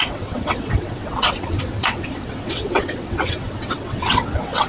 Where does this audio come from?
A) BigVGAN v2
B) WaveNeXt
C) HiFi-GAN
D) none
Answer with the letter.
B